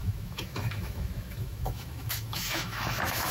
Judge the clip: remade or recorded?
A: remade